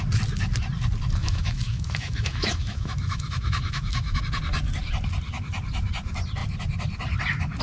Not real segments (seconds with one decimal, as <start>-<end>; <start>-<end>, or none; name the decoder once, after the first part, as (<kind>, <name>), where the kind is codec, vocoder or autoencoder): 1.2-4.2 (autoencoder, DAC-VAE)